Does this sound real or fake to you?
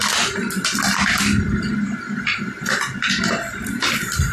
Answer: real